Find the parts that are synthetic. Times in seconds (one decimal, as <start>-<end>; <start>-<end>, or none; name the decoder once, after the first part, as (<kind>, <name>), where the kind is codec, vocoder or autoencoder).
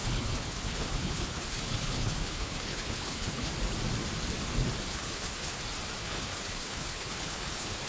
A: 0.0-3.5 (codec, HILCodec); 4.9-5.6; 6.0-7.9